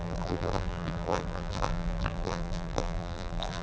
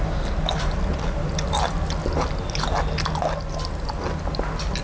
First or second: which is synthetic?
first